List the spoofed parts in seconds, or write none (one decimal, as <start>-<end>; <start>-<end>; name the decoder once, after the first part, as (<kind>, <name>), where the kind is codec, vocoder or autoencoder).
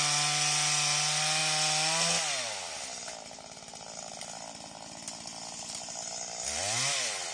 none